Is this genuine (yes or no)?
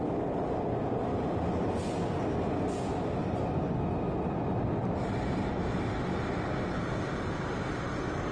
yes